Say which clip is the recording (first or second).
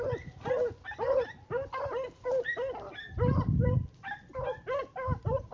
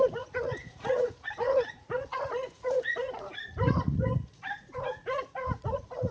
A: first